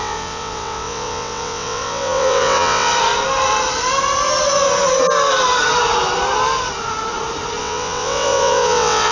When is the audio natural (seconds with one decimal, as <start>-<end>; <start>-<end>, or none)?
2.9-7.6